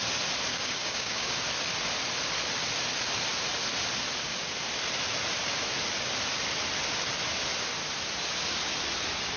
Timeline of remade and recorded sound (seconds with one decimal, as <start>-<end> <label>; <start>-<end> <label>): 0.0-0.5 recorded; 0.5-1.3 remade; 1.3-9.4 recorded